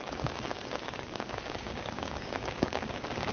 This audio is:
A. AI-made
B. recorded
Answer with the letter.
A